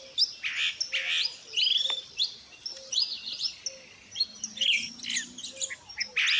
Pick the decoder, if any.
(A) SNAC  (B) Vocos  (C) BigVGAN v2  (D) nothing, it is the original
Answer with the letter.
D